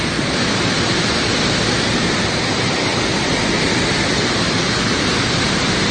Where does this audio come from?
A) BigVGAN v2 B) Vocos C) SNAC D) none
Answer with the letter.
D